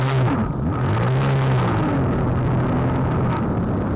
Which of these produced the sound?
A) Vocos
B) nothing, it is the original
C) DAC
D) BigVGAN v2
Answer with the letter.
B